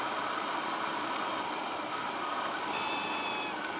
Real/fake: real